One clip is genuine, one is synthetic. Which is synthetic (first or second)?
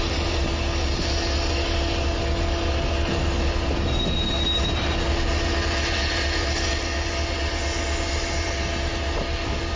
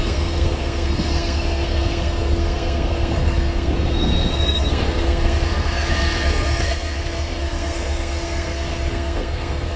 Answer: second